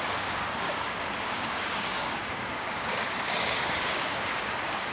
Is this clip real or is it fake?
fake